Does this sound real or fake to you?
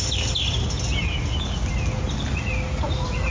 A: real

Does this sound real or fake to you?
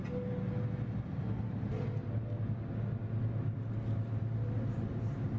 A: real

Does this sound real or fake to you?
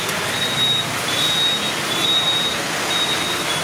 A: real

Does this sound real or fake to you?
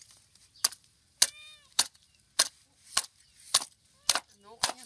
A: real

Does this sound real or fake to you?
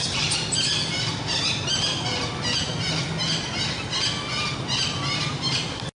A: real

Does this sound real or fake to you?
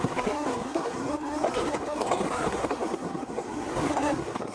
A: fake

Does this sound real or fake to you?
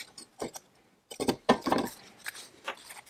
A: real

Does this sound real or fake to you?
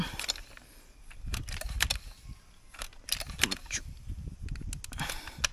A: real